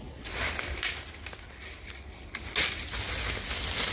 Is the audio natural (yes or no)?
yes